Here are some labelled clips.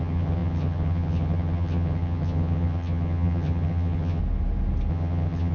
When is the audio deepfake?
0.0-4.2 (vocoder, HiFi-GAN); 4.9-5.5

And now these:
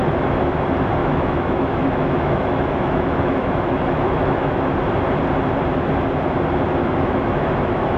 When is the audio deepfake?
1.0-4.6 (autoencoder, DAC-VAE); 6.8-8.0

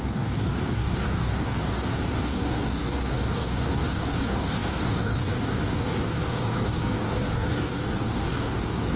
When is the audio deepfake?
0.0-9.0 (codec, DAC)

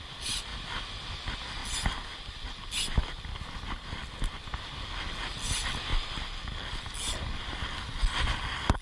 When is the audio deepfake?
none

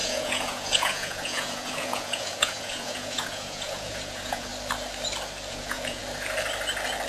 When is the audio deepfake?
0.0-4.5 (vocoder, Vocos); 5.5-6.0

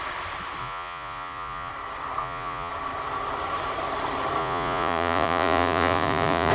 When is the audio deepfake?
0.6-1.7 (vocoder, Vocos); 2.2-2.7; 4.4-6.5

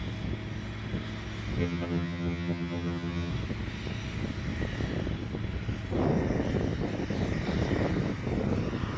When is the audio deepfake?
1.6-3.3 (vocoder, HiFi-GAN)

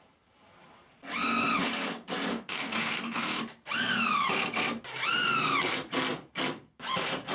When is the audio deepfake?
2.3-3.4 (codec, DAC)